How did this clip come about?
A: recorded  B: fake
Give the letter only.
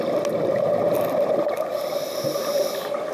A